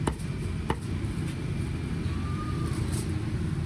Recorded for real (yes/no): yes